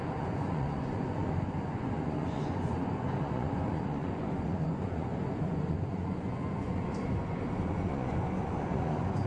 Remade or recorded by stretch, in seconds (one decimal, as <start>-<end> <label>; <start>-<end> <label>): 0.0-6.9 remade; 6.9-7.6 recorded; 7.6-9.3 remade